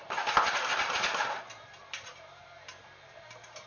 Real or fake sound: real